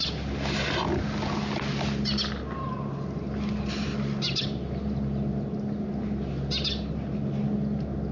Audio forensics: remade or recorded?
recorded